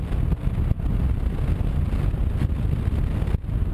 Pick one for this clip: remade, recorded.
recorded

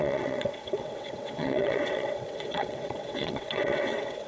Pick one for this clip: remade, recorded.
remade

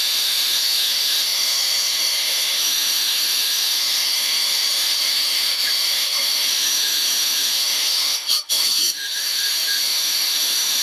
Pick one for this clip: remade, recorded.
remade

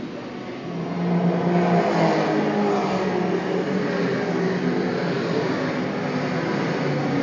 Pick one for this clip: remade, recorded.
recorded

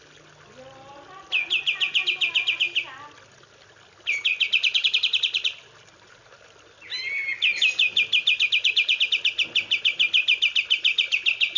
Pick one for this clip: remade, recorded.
recorded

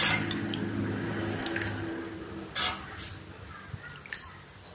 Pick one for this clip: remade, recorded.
recorded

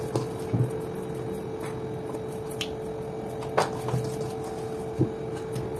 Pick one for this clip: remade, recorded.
recorded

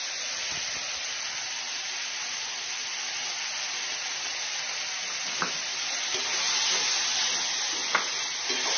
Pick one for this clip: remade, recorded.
recorded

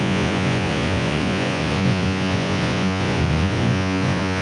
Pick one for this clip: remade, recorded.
remade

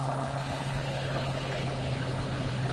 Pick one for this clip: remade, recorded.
remade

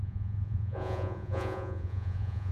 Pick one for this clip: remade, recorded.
remade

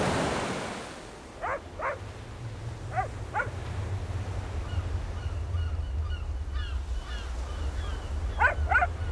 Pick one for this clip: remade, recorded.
recorded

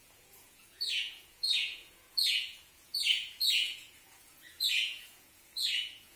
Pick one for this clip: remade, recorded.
remade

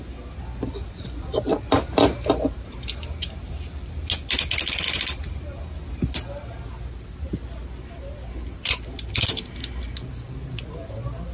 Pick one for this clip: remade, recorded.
recorded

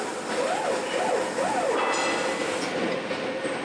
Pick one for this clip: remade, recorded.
recorded